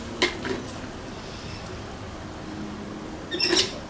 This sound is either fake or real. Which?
real